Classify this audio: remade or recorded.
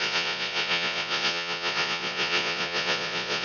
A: remade